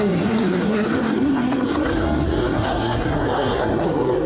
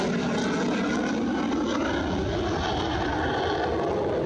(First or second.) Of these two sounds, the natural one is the second